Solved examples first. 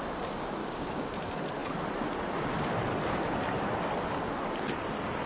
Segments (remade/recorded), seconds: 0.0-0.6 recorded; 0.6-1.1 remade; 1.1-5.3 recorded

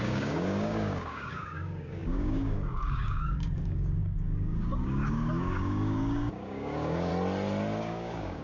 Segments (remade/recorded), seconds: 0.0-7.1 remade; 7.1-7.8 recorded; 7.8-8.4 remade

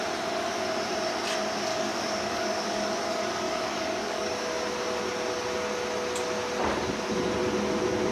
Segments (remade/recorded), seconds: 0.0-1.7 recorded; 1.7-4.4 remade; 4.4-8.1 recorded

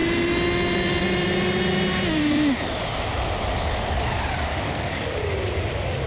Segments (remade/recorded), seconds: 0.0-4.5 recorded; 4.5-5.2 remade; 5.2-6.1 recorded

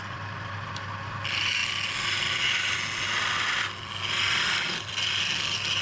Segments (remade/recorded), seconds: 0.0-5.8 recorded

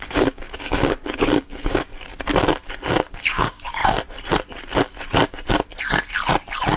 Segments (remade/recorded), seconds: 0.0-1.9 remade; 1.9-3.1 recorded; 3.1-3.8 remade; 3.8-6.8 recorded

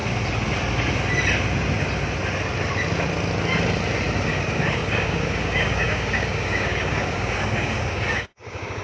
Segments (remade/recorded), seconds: 0.0-4.3 recorded; 4.3-8.8 remade